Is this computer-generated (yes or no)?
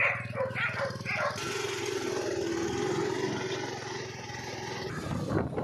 no